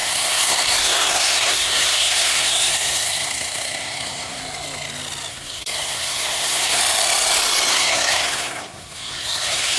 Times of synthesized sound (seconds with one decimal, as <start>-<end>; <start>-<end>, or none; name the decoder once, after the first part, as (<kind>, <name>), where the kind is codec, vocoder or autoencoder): 0.0-4.4 (codec, SNAC); 5.3-6.8; 7.7-9.8